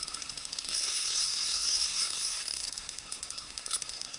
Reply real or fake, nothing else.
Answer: fake